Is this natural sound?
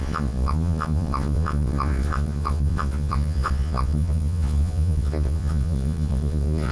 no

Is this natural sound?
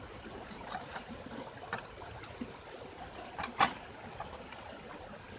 yes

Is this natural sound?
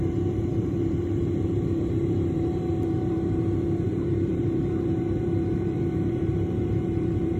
no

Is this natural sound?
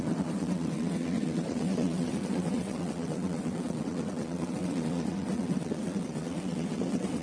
no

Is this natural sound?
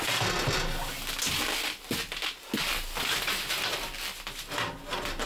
yes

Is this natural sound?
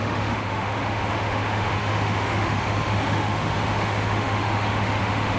no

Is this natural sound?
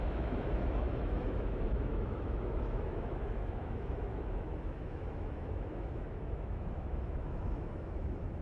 no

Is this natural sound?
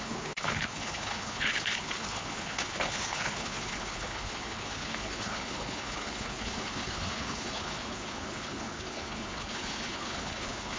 no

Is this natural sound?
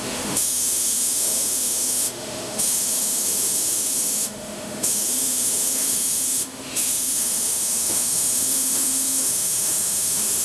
no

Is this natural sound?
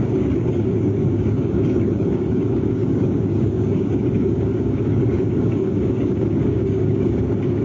no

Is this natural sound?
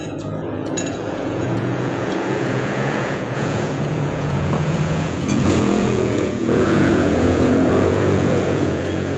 no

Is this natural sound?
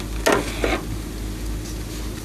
yes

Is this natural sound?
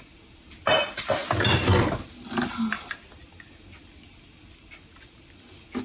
yes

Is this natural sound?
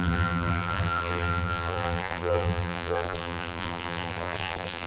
no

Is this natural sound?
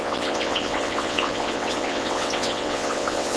no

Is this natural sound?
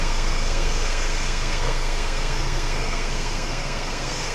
no